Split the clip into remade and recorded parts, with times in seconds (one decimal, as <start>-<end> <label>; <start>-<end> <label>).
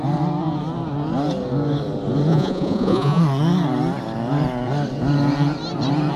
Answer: 0.0-2.3 recorded; 2.3-3.2 remade; 3.2-6.2 recorded